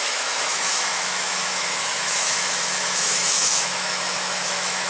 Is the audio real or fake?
fake